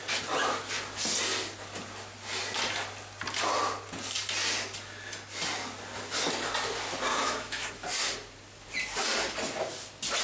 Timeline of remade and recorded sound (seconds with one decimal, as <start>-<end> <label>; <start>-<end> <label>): 0.0-7.1 recorded; 7.1-7.7 remade; 7.7-10.2 recorded